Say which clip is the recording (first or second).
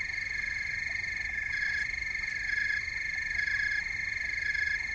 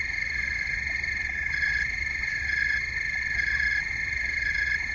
first